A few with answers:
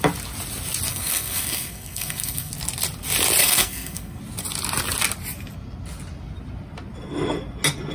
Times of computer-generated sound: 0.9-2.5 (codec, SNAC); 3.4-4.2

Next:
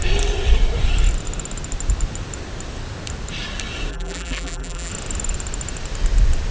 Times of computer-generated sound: 3.9-4.9 (vocoder, BigVGAN v2)

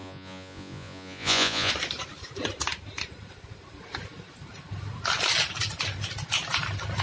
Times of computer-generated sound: 0.0-1.7 (vocoder, Vocos)

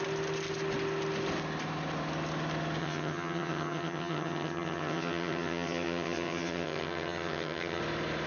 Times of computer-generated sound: 2.8-7.8 (vocoder, HiFi-GAN)

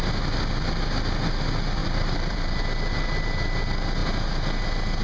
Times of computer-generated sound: 1.8-2.6 (vocoder, BigVGAN v2)

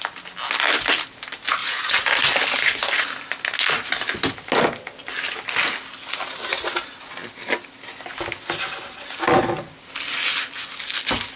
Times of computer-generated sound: 1.6-2.3 (vocoder, Vocos)

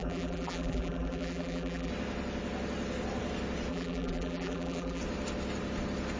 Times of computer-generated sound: 0.0-1.9 (vocoder, BigVGAN v2); 3.7-5.0

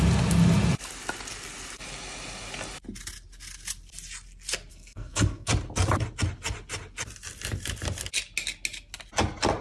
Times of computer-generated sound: 4.7-5.5 (codec, SNAC)